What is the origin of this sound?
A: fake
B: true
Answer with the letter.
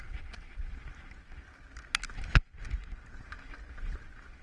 B